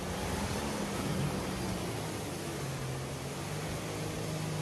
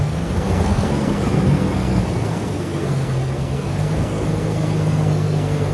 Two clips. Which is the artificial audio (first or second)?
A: second